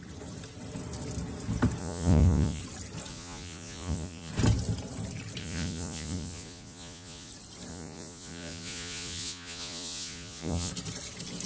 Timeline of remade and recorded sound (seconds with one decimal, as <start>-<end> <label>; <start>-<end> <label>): 0.0-1.8 recorded; 1.8-2.6 remade; 2.6-3.1 recorded; 3.1-4.3 remade; 4.3-5.4 recorded; 5.4-7.3 remade; 7.3-7.7 recorded; 7.7-10.7 remade; 10.7-11.5 recorded